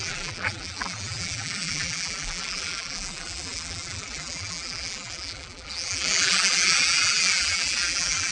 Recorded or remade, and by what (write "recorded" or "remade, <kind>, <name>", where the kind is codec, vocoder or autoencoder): remade, vocoder, BigVGAN v2